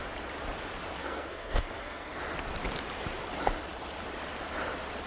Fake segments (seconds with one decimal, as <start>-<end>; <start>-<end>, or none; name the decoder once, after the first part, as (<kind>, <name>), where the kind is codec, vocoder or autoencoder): 1.0-2.2 (codec, SNAC)